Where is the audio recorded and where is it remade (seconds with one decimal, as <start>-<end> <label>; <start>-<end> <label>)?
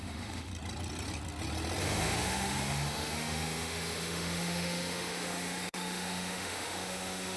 0.0-0.5 remade; 0.5-1.8 recorded; 1.8-7.4 remade